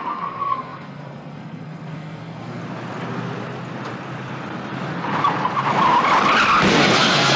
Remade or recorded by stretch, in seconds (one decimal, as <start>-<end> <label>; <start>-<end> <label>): 0.0-2.6 remade; 2.6-6.7 recorded; 6.7-7.4 remade